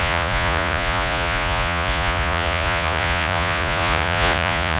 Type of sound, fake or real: fake